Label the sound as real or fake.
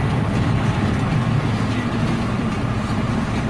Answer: real